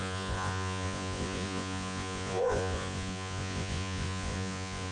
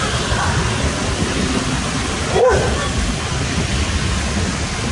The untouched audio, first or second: second